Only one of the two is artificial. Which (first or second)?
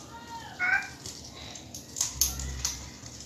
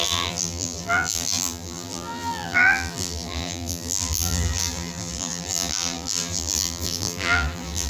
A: second